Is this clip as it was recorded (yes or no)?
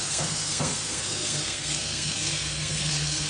no